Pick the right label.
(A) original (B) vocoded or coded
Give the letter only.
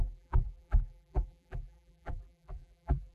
B